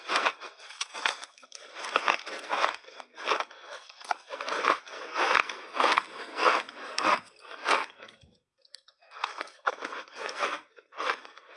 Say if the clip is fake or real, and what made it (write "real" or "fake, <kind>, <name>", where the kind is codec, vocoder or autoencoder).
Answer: fake, codec, SNAC